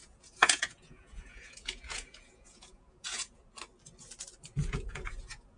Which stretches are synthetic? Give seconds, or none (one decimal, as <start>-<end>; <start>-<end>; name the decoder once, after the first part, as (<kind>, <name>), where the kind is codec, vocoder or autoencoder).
0.0-3.4 (vocoder, Vocos); 4.6-5.6